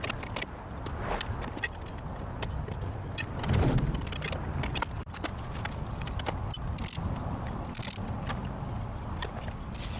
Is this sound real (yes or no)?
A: yes